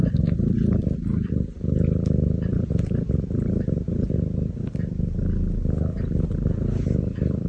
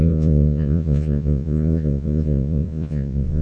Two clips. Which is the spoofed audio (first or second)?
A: second